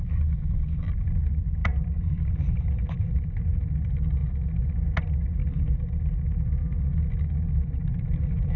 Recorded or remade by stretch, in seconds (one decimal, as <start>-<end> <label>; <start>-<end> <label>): 0.0-1.6 recorded; 1.6-2.4 remade; 2.4-7.8 recorded; 7.8-8.6 remade